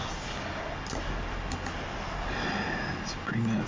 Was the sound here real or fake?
real